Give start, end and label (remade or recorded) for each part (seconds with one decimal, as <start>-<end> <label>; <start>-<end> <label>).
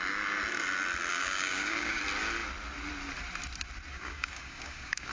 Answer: 0.0-1.1 recorded; 1.1-2.0 remade; 2.0-3.9 recorded; 3.9-5.1 remade